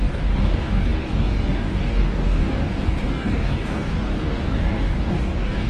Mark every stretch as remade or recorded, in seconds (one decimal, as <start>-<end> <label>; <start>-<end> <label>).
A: 0.0-5.7 remade